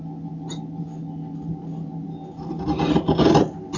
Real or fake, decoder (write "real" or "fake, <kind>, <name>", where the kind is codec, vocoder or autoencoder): real